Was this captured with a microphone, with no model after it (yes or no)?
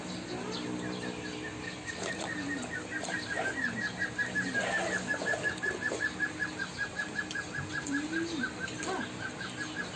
yes